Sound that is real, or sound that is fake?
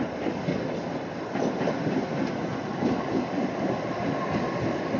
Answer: fake